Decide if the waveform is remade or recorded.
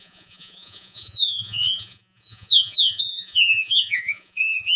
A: remade